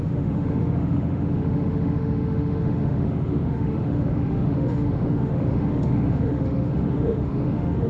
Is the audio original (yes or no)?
no